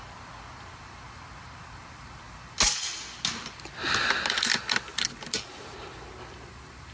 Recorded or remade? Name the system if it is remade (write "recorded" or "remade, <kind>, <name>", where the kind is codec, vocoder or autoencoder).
recorded